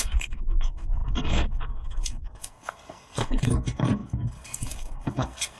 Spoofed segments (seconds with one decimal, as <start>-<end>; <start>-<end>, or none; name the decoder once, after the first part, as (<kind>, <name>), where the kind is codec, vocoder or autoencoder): 0.0-5.6 (codec, SNAC)